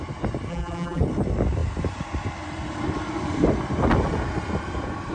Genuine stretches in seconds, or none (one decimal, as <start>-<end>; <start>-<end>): 0.0-0.5; 1.0-5.1